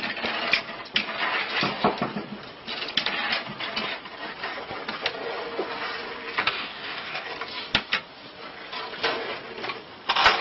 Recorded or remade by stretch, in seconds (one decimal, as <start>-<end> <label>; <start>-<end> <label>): 0.0-6.4 recorded; 6.4-7.3 remade; 7.3-10.4 recorded

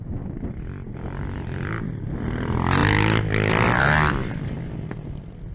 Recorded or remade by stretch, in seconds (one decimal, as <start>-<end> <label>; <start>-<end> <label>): 0.0-5.5 recorded

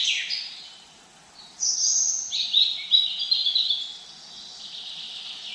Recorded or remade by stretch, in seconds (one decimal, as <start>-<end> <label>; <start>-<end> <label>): 0.0-5.5 recorded

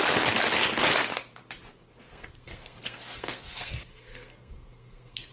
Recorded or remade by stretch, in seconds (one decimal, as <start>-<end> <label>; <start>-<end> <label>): 0.0-1.7 recorded; 1.7-5.3 remade

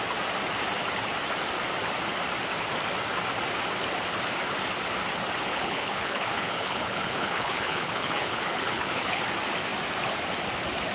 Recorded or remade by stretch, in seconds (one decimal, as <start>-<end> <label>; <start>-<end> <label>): 0.0-5.5 recorded; 5.5-9.2 remade; 9.2-10.9 recorded

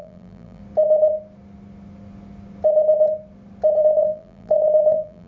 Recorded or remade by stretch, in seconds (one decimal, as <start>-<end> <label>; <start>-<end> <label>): 0.0-0.6 remade; 0.6-3.8 recorded; 3.8-5.3 remade

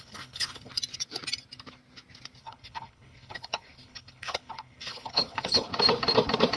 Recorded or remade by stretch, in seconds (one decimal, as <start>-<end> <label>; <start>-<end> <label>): 0.0-0.7 remade; 0.7-2.4 recorded; 2.4-5.7 remade; 5.7-6.6 recorded